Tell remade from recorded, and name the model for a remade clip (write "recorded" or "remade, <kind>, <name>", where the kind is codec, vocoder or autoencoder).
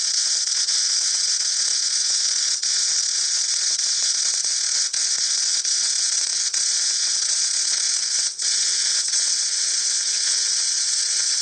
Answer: remade, vocoder, WaveNeXt